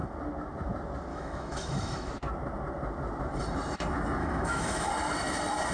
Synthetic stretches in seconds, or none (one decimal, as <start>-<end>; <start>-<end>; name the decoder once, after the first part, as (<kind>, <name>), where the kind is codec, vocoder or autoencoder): 1.1-2.1 (autoencoder, DAC-VAE); 4.2-4.9